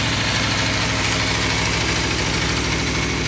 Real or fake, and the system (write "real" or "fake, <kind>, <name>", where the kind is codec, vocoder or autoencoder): real